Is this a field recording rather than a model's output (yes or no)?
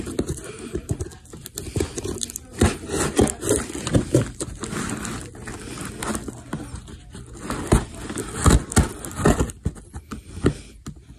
yes